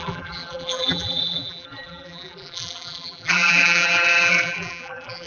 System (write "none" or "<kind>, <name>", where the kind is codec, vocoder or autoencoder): vocoder, BigVGAN v2